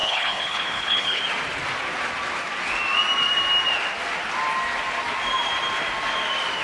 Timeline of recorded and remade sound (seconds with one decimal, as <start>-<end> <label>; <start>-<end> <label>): 0.0-1.2 remade; 1.2-6.6 recorded